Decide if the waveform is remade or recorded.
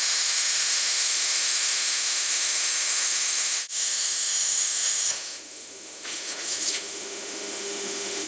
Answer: remade